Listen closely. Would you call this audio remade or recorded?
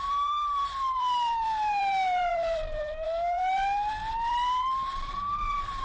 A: remade